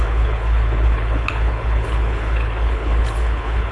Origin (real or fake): fake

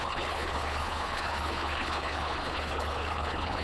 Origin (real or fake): fake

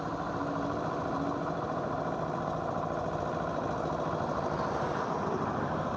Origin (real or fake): real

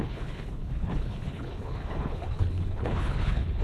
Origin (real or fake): fake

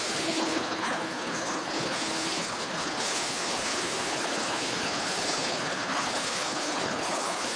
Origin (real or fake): fake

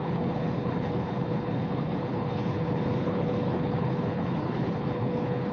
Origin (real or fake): fake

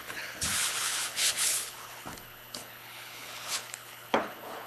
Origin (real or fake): fake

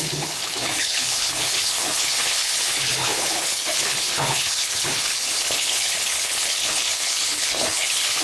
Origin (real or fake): fake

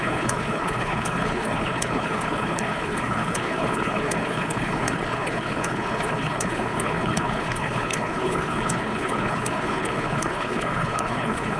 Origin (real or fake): fake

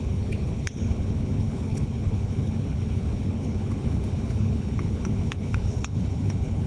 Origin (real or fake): fake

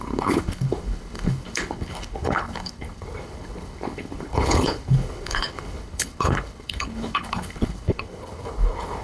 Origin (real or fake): fake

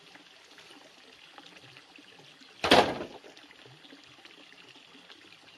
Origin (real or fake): real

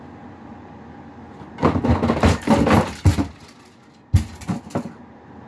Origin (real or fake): real